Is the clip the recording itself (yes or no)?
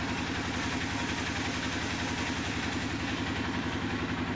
yes